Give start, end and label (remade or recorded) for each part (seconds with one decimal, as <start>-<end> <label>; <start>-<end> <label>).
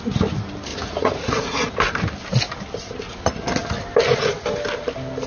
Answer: 0.0-0.7 recorded; 0.7-1.7 remade; 1.7-5.3 recorded